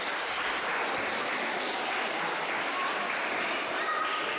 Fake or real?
real